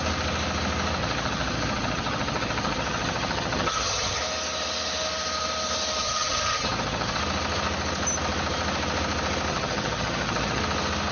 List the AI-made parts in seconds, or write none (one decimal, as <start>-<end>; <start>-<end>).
1.0-4.2; 6.0-7.2; 9.5-10.6